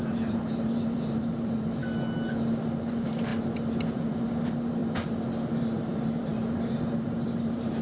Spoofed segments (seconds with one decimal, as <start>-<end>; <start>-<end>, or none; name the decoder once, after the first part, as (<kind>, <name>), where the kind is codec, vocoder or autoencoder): 0.0-1.8 (vocoder, BigVGAN v2); 2.9-3.3; 3.9-4.8; 5.6-7.8